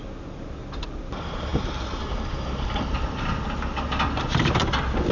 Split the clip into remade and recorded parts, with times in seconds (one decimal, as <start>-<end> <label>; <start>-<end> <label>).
0.0-5.1 recorded